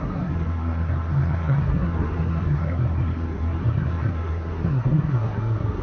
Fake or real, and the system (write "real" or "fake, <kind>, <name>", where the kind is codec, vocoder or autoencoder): fake, codec, SNAC